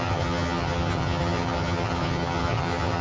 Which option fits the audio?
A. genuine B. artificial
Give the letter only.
B